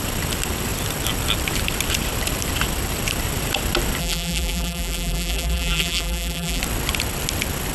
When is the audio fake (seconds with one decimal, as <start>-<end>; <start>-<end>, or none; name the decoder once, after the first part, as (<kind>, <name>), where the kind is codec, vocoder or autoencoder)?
4.0-6.6 (vocoder, BigVGAN v2)